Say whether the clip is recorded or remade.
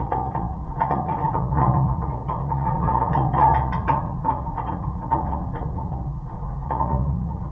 remade